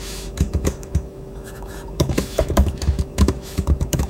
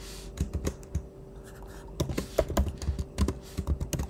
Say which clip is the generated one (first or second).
first